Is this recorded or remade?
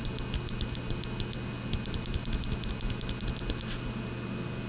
recorded